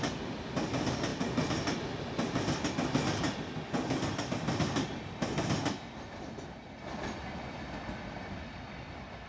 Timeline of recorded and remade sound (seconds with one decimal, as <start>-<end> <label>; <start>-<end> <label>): 0.0-9.3 recorded